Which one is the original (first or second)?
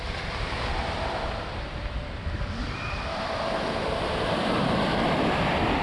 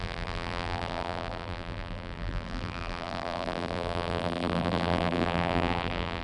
first